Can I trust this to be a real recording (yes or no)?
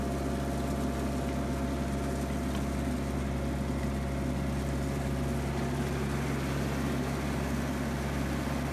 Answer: yes